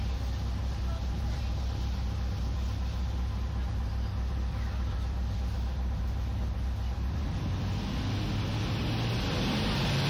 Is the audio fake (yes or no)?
no